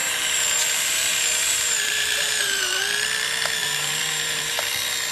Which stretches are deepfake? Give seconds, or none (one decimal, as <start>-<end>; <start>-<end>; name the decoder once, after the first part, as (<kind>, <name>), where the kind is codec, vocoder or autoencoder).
0.0-2.8 (vocoder, BigVGAN v2); 3.6-4.6